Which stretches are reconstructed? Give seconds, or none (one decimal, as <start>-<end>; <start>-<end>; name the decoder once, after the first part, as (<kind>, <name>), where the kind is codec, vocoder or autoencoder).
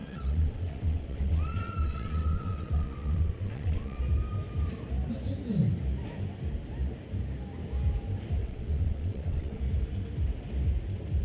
0.0-4.0 (vocoder, WaveNeXt); 8.4-9.6